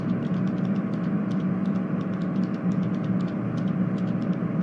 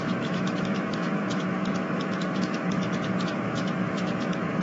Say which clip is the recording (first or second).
first